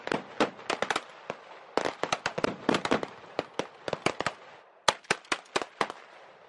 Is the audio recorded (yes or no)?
yes